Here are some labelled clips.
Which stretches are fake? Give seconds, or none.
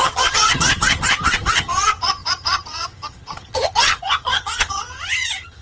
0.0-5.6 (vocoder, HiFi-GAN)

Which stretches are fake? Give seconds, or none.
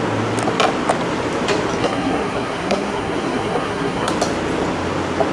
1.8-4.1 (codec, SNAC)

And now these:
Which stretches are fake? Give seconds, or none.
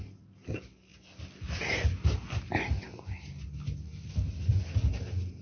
none